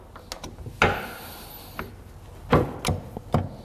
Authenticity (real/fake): real